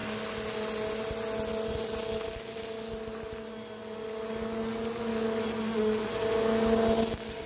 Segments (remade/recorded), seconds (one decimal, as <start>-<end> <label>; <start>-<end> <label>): 0.0-7.5 recorded